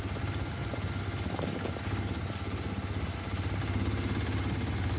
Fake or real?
real